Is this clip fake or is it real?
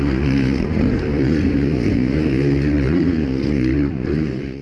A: fake